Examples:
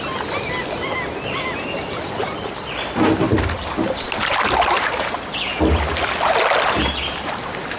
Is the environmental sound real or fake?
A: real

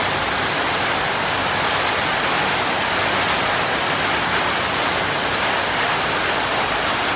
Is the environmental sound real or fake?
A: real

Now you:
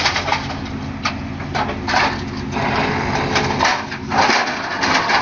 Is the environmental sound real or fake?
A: real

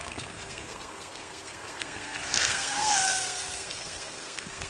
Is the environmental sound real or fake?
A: fake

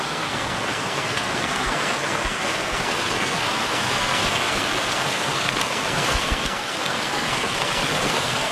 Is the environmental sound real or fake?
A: fake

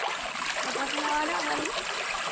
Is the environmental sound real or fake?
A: real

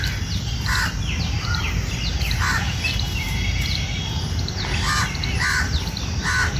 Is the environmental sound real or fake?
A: real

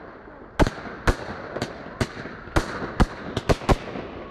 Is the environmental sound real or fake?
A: real